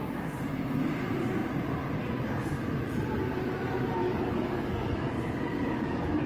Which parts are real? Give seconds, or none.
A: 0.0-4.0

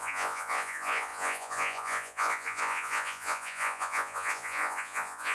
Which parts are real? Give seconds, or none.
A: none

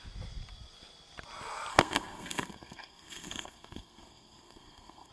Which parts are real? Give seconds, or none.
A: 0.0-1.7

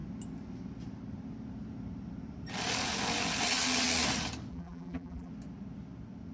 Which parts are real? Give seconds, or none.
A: 0.0-4.5; 5.3-6.3

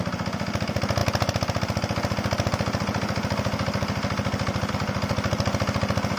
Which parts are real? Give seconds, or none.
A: 0.0-6.2

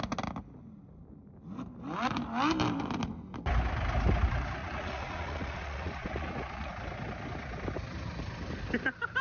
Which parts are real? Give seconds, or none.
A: 0.0-4.6; 6.7-9.2